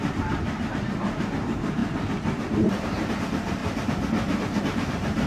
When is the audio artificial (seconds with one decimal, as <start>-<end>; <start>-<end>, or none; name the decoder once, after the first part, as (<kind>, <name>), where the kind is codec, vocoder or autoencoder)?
0.0-3.6 (vocoder, BigVGAN v2); 4.6-5.3